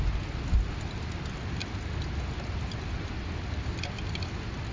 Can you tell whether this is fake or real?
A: real